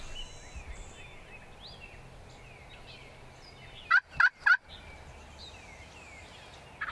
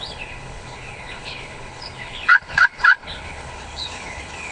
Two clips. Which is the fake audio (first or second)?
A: second